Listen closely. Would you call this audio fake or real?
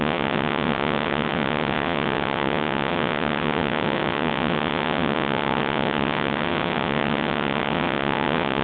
fake